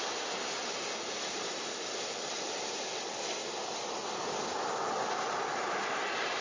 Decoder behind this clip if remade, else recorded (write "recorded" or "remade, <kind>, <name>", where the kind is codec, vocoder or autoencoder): recorded